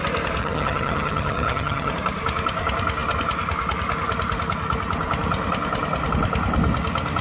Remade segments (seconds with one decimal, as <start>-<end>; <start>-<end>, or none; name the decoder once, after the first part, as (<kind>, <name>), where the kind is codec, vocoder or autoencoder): 0.4-1.9 (vocoder, HiFi-GAN)